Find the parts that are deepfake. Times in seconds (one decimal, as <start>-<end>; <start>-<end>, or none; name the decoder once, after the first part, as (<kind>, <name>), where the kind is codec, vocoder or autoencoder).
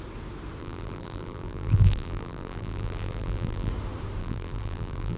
0.6-3.7 (vocoder, BigVGAN v2); 4.2-5.2